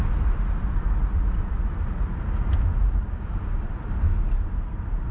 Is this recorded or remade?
recorded